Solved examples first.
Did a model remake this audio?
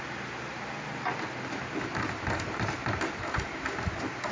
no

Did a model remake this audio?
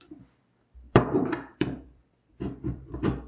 yes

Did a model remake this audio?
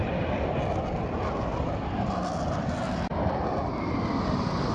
no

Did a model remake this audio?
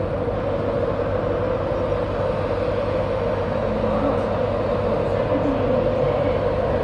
no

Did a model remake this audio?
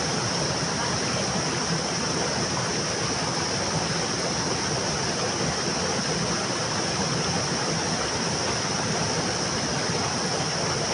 no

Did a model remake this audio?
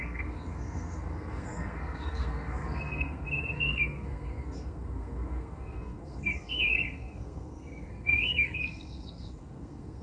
yes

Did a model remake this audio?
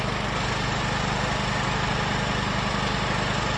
no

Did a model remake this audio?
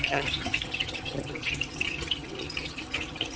yes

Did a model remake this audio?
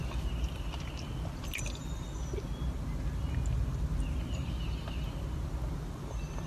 no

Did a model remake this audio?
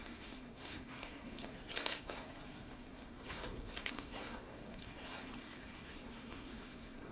yes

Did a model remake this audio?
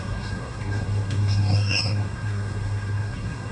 yes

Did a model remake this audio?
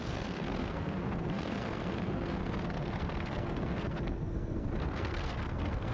yes